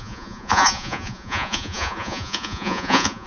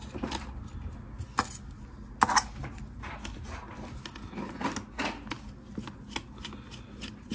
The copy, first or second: first